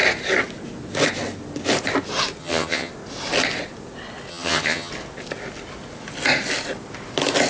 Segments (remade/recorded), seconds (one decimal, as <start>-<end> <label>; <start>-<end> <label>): 0.0-2.4 recorded; 2.4-2.9 remade; 2.9-4.3 recorded; 4.3-4.9 remade; 4.9-7.5 recorded

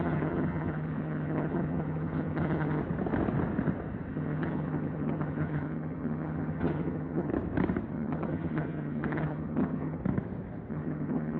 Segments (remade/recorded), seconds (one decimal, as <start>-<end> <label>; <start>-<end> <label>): 0.0-2.8 remade; 2.8-4.1 recorded; 4.1-7.3 remade; 7.3-7.9 recorded; 7.9-10.0 remade; 10.0-10.7 recorded; 10.7-11.4 remade

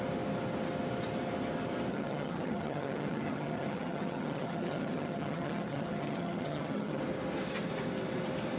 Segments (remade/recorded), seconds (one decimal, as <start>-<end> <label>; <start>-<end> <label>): 0.0-1.9 recorded; 1.9-7.0 remade; 7.0-8.6 recorded

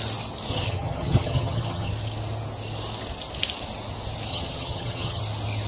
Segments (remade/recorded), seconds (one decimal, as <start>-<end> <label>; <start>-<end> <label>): 0.0-0.5 recorded; 0.5-1.9 remade; 1.9-4.3 recorded; 4.3-5.2 remade; 5.2-5.7 recorded

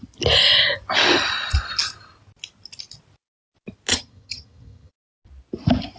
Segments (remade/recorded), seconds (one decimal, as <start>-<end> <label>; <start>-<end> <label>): 0.0-3.9 recorded; 3.9-4.9 remade; 4.9-6.0 recorded

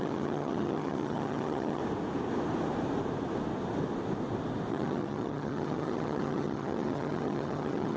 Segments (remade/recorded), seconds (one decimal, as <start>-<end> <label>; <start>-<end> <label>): 0.0-1.8 remade; 1.8-4.7 recorded; 4.7-8.0 remade

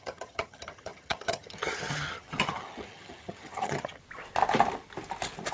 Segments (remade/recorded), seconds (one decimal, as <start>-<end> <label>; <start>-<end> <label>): 0.0-4.0 remade; 4.0-5.5 recorded

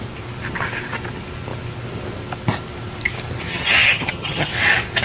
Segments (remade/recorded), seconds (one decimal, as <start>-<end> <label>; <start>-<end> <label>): 0.0-3.5 recorded; 3.5-4.5 remade; 4.5-5.0 recorded